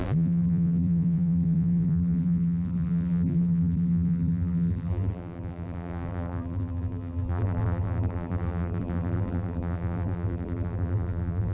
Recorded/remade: remade